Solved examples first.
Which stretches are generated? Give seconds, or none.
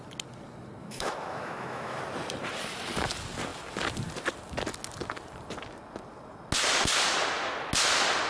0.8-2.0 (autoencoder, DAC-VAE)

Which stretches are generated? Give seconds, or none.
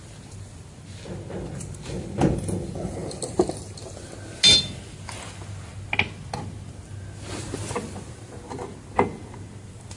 none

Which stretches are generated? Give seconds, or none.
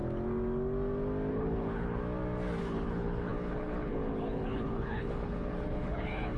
1.3-2.0 (codec, HILCodec); 2.6-6.4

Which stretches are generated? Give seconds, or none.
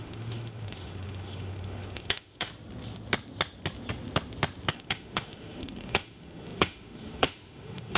0.0-2.5 (autoencoder, DAC-VAE); 4.7-8.0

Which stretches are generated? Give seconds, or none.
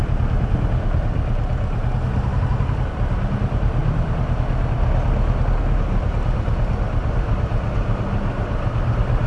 none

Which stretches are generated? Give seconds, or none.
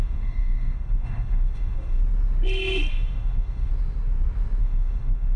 0.0-2.0 (autoencoder, DAC-VAE); 2.9-3.7; 4.6-5.4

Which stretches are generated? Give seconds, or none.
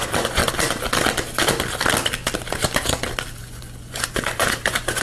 0.0-0.4 (vocoder, Vocos); 3.4-5.0